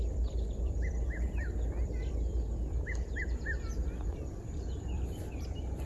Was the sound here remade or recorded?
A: remade